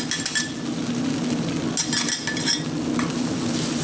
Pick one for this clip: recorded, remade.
recorded